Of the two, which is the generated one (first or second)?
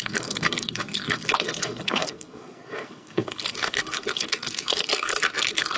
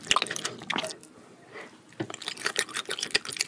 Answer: first